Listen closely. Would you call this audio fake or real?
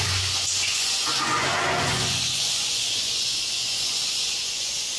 fake